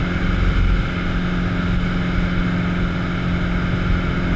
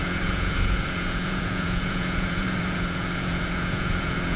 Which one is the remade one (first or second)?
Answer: second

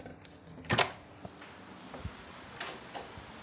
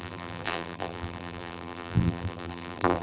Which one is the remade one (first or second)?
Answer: second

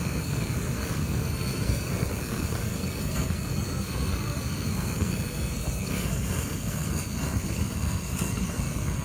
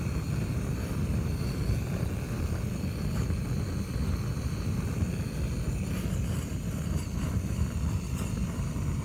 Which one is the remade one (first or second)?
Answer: first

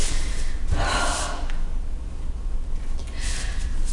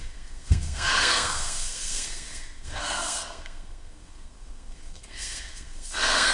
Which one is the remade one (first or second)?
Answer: second